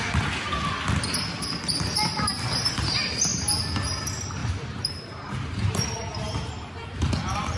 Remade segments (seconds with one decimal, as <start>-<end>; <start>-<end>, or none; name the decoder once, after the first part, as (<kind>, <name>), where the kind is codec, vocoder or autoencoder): 4.4-6.7 (vocoder, BigVGAN v2)